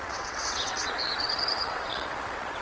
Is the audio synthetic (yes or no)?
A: yes